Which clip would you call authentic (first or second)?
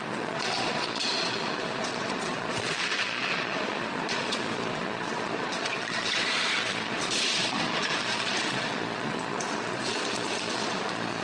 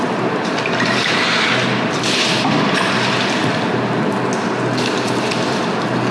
second